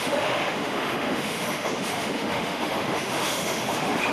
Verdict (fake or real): fake